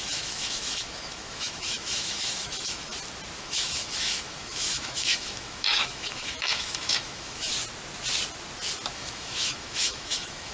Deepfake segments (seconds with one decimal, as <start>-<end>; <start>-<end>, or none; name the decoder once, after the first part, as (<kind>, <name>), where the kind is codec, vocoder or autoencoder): 0.0-2.9 (autoencoder, DAC-VAE); 3.4-7.5; 8.9-10.5